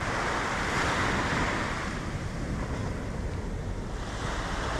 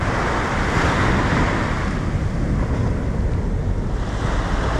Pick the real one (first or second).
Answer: second